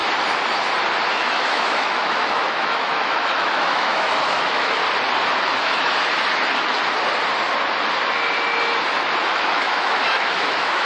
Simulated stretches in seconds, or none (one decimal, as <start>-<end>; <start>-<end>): 1.1-4.8; 5.4-5.9; 9.3-10.9

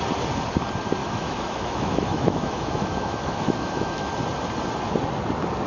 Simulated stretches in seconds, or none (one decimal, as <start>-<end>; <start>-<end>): 1.0-4.1

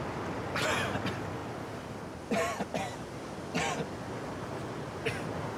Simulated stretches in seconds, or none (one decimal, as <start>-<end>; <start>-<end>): none

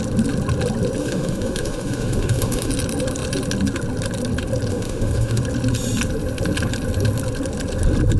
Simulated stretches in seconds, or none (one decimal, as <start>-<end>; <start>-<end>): 1.0-2.7; 4.7-5.4

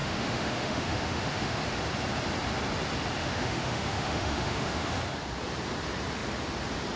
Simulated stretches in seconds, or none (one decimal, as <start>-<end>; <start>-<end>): 0.0-1.7; 3.2-5.0

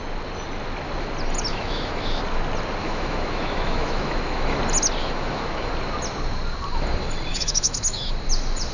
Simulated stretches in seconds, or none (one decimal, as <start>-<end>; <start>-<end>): 1.5-2.2; 2.8-4.6; 5.0-5.7; 7.3-8.1

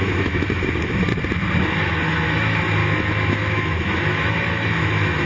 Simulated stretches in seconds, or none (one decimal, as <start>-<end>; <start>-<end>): 0.0-1.1; 1.8-2.8; 3.3-5.3

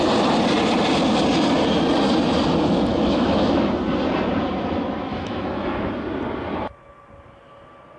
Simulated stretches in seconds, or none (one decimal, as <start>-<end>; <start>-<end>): 2.9-3.7; 5.1-5.9